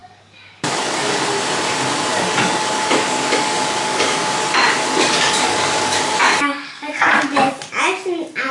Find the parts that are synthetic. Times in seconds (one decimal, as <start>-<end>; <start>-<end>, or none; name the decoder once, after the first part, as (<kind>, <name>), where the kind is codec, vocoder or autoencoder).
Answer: 0.0-1.2 (codec, DAC); 2.1-4.3; 4.8-7.6